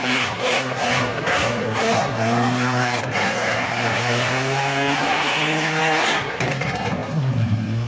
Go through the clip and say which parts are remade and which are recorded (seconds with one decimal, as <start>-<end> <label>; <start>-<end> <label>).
0.0-7.9 remade